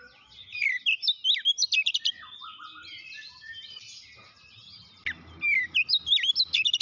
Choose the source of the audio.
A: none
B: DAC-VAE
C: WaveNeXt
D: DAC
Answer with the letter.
A